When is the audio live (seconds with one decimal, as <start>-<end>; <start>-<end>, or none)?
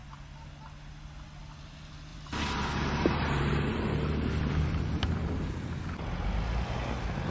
0.0-2.1; 5.5-7.3